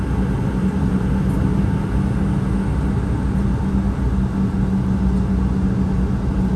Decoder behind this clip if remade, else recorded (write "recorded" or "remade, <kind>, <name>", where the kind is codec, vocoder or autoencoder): recorded